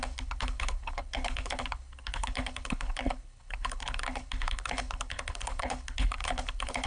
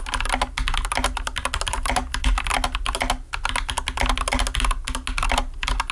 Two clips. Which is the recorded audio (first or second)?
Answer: second